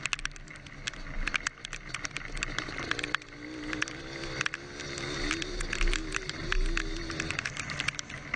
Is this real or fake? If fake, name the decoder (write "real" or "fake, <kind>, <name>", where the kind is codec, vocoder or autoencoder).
real